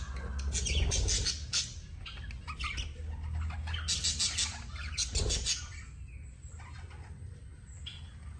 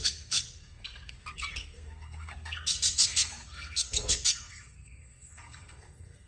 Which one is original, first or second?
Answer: first